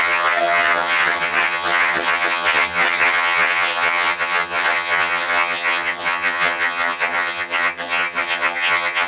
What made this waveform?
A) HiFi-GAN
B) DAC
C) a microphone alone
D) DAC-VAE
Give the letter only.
A